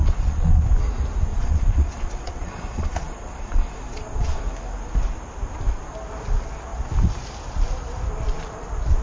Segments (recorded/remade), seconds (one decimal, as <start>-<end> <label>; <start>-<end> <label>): 0.0-0.6 remade; 0.6-1.3 recorded; 1.3-4.4 remade; 4.4-9.0 recorded